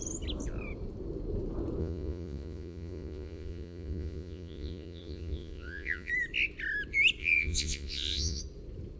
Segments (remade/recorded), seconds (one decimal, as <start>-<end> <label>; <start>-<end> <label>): 0.0-1.8 recorded; 1.8-6.1 remade; 6.1-7.2 recorded; 7.2-8.4 remade; 8.4-9.0 recorded